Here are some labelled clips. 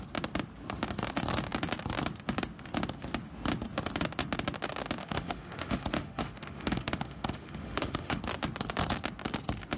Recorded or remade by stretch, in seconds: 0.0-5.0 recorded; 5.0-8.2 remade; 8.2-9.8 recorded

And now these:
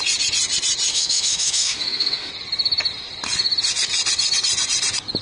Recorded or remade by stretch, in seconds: 0.0-0.9 recorded; 0.9-2.3 remade; 2.3-5.2 recorded

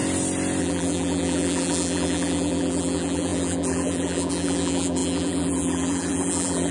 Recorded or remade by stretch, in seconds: 0.0-0.6 recorded; 0.6-6.7 remade

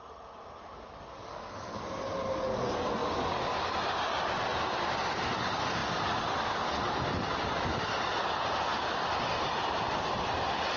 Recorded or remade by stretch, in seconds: 0.0-1.3 recorded; 1.3-1.8 remade; 1.8-10.8 recorded